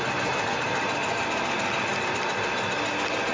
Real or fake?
real